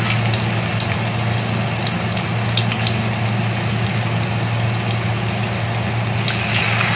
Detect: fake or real real